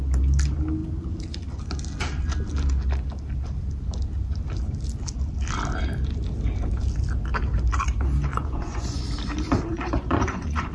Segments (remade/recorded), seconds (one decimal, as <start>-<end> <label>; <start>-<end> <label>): 0.0-8.3 recorded; 8.3-9.1 remade; 9.1-9.7 recorded; 9.7-10.7 remade